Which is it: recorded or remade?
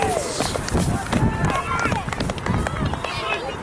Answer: recorded